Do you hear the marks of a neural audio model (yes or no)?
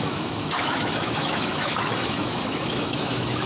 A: yes